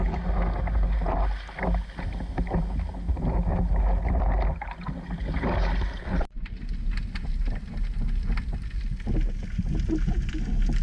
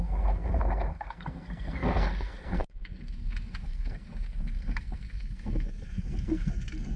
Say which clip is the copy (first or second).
second